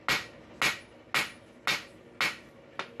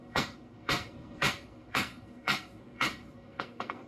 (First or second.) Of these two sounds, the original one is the first